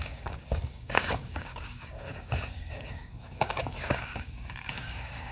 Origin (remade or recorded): remade